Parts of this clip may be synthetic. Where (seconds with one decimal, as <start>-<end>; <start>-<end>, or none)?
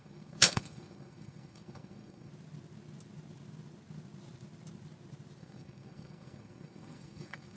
0.0-2.3; 5.4-7.6